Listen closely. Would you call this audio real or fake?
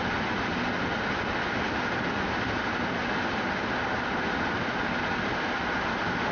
real